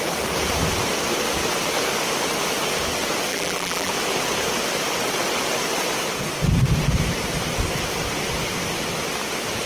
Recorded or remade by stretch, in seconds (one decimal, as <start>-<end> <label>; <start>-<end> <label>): 0.0-3.3 recorded; 3.3-3.9 remade; 3.9-9.7 recorded